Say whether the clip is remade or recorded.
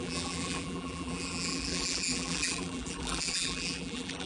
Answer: remade